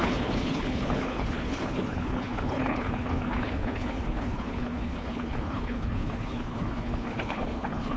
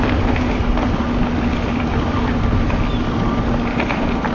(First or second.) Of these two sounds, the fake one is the first